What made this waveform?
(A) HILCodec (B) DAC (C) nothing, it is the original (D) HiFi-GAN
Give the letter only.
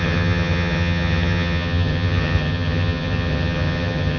D